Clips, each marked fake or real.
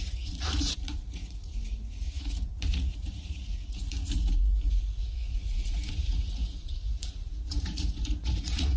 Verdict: fake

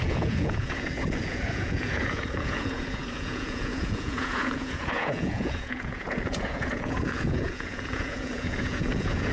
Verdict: fake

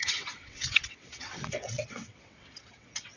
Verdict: fake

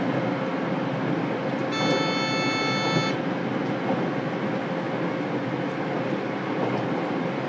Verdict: real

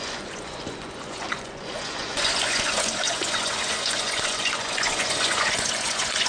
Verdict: fake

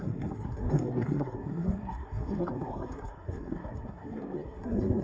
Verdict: fake